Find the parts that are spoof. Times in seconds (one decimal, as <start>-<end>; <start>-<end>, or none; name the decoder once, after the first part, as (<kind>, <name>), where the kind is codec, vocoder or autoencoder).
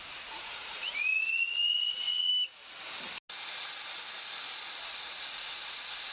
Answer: 0.0-2.3 (vocoder, Vocos); 4.8-6.1